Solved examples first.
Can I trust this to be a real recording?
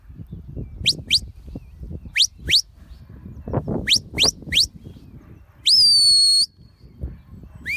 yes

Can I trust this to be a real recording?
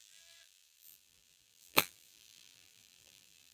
no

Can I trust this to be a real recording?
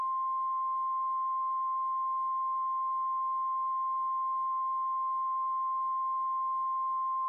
yes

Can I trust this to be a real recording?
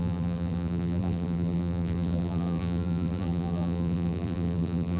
no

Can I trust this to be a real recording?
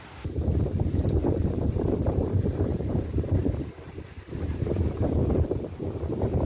no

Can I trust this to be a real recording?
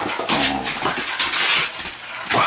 yes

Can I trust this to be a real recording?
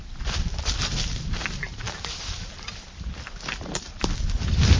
yes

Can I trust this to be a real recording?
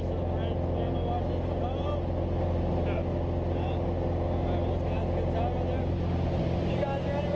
yes